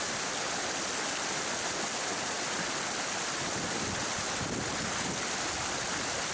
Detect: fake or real real